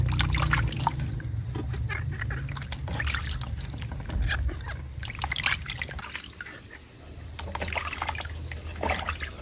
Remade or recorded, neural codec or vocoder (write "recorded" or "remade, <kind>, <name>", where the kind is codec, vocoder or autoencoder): recorded